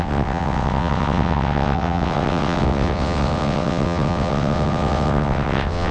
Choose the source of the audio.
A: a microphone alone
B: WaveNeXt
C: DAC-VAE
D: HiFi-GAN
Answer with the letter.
B